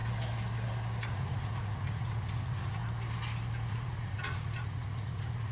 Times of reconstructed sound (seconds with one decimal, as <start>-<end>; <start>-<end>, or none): 1.1-2.8; 3.7-5.5